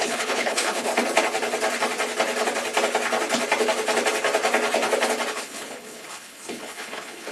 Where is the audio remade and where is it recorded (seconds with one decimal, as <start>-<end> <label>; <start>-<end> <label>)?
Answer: 0.0-0.9 remade; 0.9-5.3 recorded; 5.3-7.3 remade